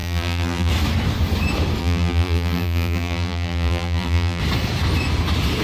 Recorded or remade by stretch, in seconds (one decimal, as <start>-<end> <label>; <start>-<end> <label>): 0.0-0.7 remade; 0.7-1.8 recorded; 1.8-4.4 remade; 4.4-5.6 recorded